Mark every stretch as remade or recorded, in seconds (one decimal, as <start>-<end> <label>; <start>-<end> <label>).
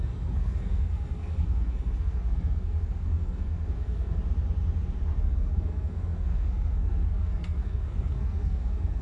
0.0-4.2 remade; 4.2-5.2 recorded; 5.2-9.0 remade